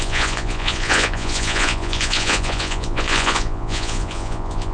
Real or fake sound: fake